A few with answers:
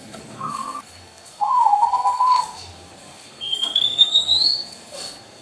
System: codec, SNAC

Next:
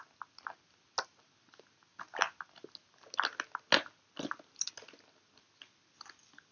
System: none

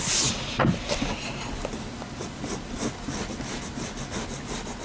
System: none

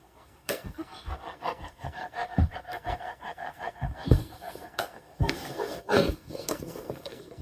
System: codec, SNAC